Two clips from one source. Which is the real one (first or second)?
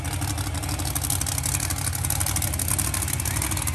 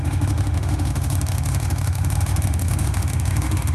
first